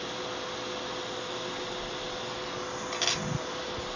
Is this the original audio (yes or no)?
yes